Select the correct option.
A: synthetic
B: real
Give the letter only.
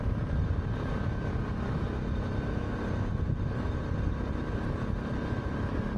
A